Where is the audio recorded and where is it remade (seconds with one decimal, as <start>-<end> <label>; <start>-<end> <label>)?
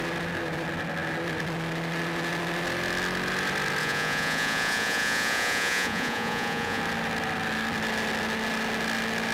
0.0-3.8 recorded; 3.8-6.8 remade; 6.8-9.3 recorded